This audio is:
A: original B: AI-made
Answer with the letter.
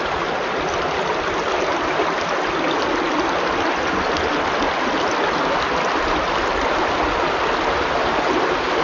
A